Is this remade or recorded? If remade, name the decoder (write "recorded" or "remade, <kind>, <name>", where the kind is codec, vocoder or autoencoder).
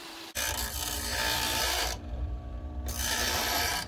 remade, vocoder, BigVGAN v2